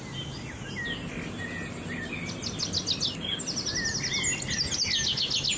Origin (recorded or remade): recorded